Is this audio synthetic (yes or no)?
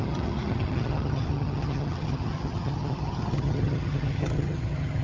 yes